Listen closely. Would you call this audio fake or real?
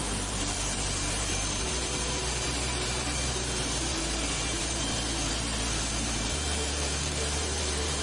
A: fake